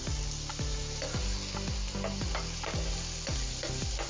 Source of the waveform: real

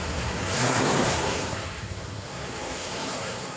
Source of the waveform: fake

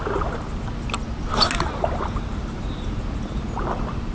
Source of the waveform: real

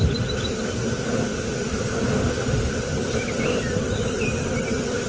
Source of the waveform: real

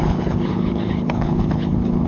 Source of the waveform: fake